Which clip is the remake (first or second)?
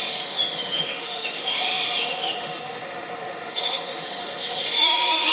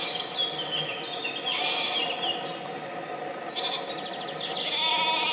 first